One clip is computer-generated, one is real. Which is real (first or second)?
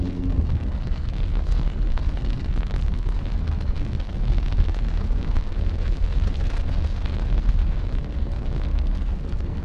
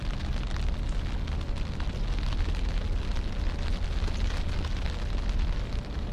second